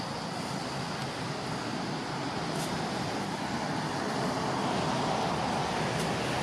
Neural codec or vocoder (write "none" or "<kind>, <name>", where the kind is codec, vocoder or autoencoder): none